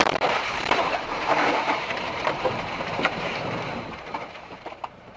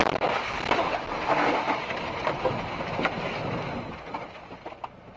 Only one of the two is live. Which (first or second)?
second